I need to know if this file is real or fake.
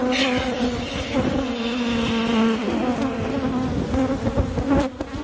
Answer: real